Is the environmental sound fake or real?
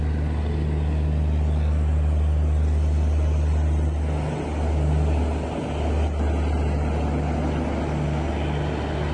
real